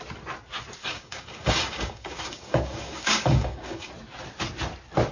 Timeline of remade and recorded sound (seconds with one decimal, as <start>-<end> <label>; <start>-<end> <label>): 0.0-0.8 recorded; 0.8-3.9 remade; 3.9-5.1 recorded